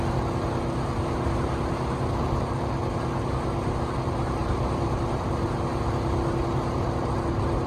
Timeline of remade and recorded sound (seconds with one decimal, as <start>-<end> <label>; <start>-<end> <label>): 0.0-4.4 recorded; 4.4-5.3 remade; 5.3-7.7 recorded